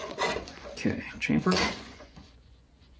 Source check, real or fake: fake